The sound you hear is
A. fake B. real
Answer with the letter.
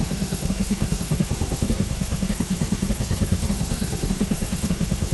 A